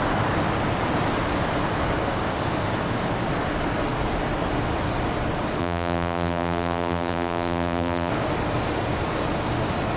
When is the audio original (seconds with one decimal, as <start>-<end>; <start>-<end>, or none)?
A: 0.0-5.6; 8.1-10.0